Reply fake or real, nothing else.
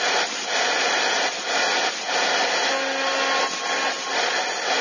real